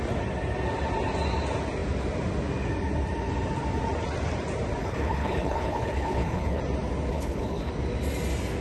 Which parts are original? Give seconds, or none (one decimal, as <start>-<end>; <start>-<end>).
0.0-4.8; 6.6-7.1; 7.7-8.6